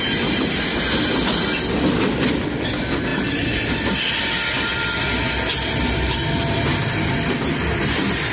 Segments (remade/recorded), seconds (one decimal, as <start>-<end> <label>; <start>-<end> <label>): 0.0-8.3 recorded